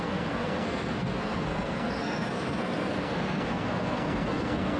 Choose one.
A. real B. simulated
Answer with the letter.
B